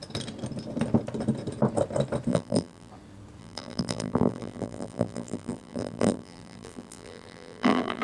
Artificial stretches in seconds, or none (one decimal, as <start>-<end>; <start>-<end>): 2.3-2.9; 3.4-8.0